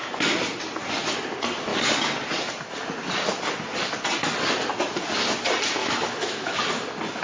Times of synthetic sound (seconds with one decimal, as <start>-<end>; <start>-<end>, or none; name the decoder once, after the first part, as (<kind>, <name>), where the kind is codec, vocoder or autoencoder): 5.8-6.6 (autoencoder, DAC-VAE)